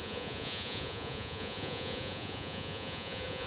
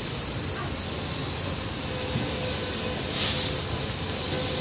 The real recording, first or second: second